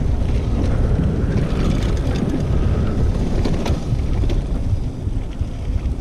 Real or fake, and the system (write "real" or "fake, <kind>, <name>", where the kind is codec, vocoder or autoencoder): real